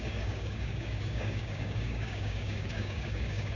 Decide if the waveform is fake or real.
fake